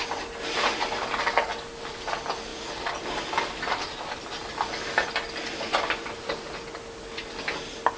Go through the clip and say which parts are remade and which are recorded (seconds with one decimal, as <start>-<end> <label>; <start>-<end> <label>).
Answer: 0.0-8.0 recorded